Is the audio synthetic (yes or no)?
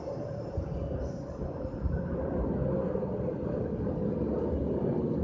no